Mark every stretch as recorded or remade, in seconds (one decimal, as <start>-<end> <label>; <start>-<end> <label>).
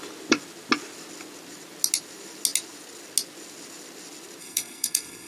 0.0-4.4 recorded; 4.4-5.3 remade